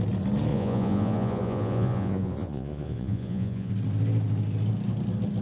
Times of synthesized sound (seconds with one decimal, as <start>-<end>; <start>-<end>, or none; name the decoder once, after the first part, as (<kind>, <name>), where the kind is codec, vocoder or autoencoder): 0.5-3.7 (vocoder, Vocos)